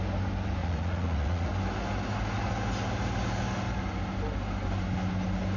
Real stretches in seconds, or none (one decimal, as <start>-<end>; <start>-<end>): 0.0-0.6; 1.5-5.6